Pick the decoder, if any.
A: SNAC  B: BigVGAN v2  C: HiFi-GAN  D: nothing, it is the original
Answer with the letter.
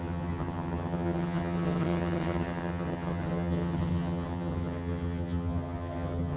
C